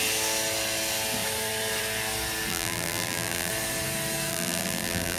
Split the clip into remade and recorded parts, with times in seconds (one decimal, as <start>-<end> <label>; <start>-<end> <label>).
0.0-2.5 recorded; 2.5-3.5 remade; 3.5-4.3 recorded; 4.3-5.2 remade